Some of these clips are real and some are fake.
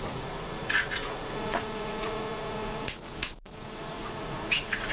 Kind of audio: fake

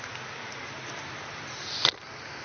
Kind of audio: real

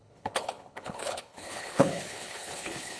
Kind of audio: fake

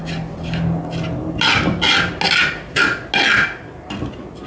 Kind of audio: real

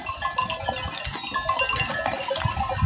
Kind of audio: real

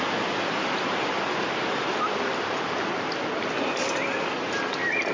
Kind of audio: real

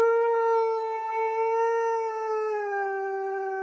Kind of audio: real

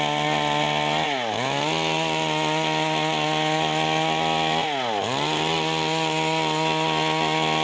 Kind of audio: real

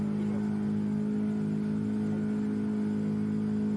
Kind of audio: real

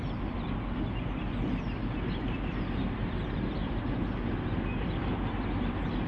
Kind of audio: real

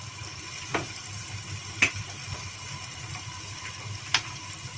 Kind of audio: real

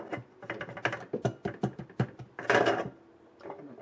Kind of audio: real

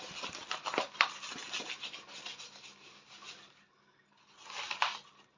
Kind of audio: real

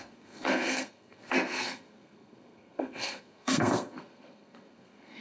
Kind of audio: fake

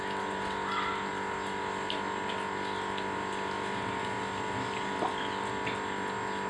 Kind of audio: real